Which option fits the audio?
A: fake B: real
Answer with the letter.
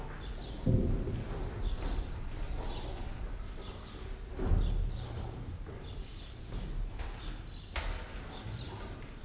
B